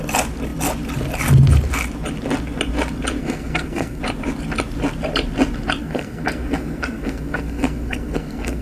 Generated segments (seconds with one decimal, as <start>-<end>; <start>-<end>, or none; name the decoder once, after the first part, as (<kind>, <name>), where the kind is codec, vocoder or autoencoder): 3.2-4.0 (codec, SNAC); 5.8-8.6